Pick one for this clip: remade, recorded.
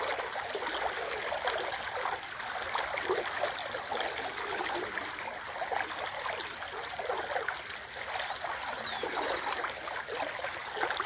recorded